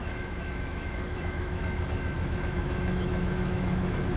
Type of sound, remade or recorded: remade